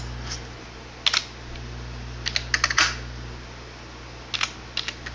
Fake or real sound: real